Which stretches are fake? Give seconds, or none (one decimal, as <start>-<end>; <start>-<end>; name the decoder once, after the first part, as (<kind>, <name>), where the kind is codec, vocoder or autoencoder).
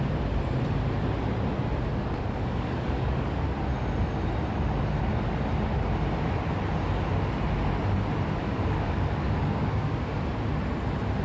1.9-3.4 (codec, DAC); 8.4-10.1